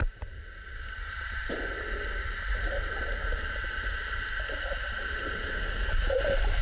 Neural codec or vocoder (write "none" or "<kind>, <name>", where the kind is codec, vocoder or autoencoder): none